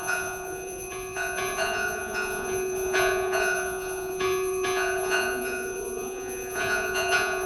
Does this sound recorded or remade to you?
remade